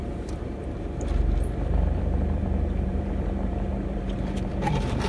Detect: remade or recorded remade